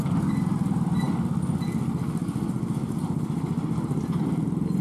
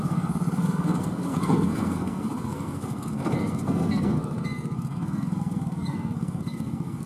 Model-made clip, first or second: second